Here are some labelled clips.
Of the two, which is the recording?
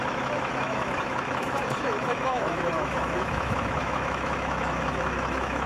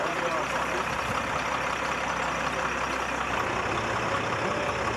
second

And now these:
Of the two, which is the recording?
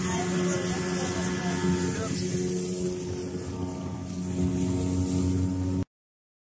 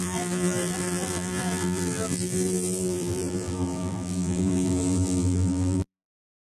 first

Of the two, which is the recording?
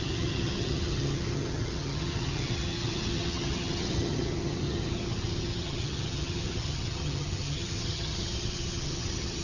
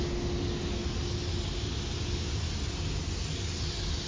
second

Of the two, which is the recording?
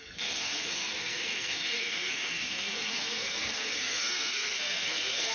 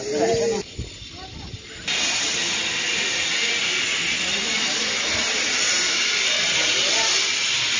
second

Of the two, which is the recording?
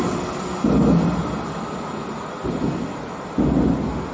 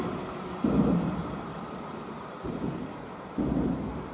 first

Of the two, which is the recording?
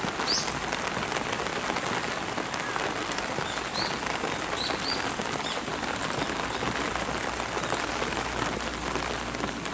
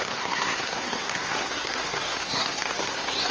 first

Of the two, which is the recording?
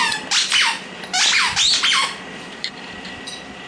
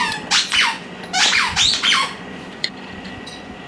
first